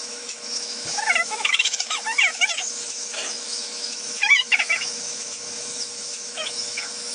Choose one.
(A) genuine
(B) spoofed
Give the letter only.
B